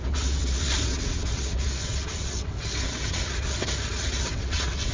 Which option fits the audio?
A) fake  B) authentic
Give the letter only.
A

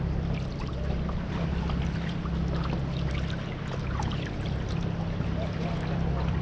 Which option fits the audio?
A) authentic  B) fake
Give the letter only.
A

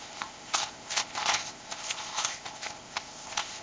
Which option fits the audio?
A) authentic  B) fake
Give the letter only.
B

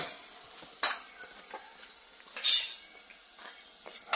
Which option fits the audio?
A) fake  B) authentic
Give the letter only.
B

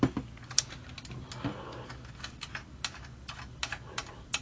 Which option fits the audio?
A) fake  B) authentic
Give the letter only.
B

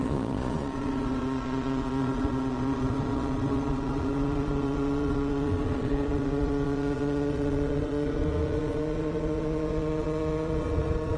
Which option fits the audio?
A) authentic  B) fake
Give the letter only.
B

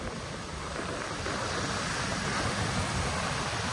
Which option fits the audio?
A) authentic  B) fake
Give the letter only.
A